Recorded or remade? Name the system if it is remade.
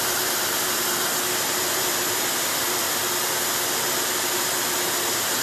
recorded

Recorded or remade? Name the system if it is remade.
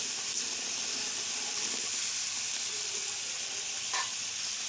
recorded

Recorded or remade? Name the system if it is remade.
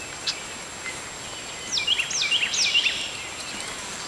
recorded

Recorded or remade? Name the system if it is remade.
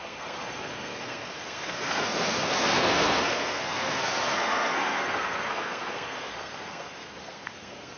remade, codec, SNAC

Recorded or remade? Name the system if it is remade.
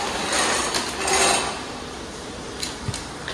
recorded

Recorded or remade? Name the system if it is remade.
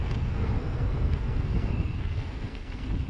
remade, codec, SNAC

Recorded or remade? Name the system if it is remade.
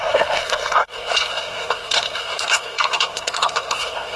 remade, codec, SNAC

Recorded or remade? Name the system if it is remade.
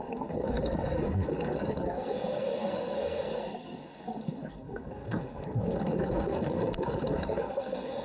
remade, codec, SNAC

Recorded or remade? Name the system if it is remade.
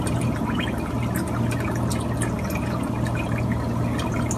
recorded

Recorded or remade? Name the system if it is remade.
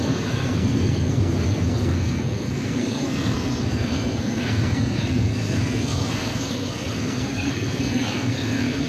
remade, codec, SNAC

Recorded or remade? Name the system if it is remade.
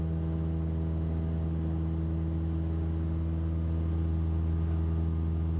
recorded